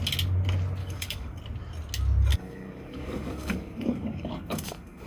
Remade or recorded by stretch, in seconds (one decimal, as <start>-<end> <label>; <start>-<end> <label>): 0.0-0.8 recorded; 0.8-1.4 remade; 1.4-2.3 recorded; 2.3-5.1 remade